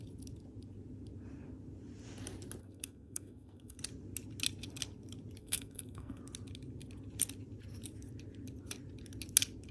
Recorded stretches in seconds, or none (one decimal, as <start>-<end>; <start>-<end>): 0.0-2.6; 3.8-5.4; 6.2-9.7